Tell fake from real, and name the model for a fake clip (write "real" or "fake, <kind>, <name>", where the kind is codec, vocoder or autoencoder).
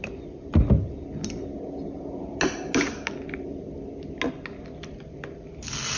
real